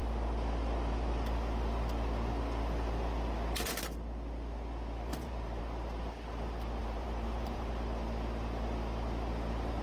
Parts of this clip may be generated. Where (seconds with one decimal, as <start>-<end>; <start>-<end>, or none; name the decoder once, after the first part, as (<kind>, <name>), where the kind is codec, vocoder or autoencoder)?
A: 5.1-5.6 (vocoder, BigVGAN v2); 6.8-7.7